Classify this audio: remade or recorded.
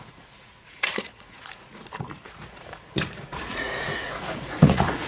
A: remade